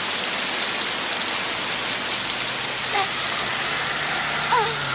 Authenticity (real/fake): real